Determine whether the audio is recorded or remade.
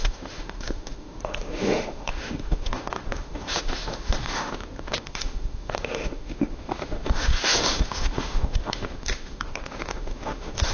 remade